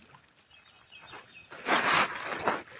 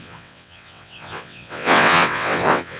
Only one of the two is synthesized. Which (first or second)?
second